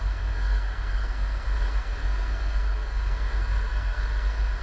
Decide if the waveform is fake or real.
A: fake